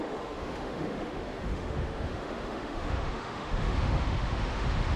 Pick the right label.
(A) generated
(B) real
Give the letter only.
A